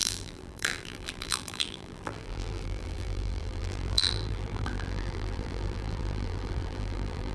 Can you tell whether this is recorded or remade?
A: remade